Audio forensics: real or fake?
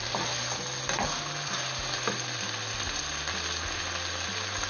real